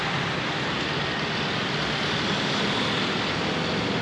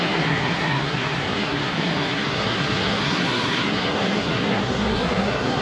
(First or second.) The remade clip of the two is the second